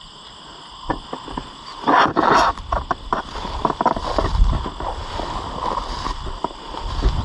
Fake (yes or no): no